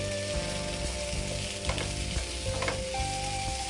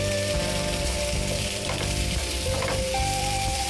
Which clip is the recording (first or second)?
first